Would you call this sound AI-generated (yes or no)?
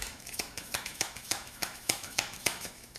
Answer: yes